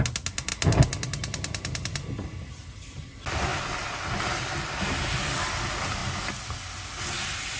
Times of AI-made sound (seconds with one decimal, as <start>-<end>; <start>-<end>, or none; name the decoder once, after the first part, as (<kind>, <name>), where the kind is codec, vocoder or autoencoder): none